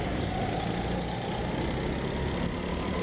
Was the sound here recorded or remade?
recorded